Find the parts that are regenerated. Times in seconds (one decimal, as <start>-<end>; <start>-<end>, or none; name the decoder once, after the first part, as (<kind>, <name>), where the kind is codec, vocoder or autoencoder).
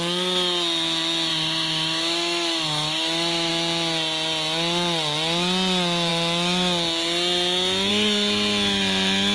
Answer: 1.3-3.5 (autoencoder, DAC-VAE)